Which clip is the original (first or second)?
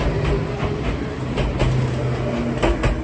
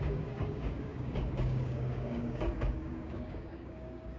first